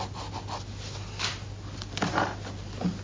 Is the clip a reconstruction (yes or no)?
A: no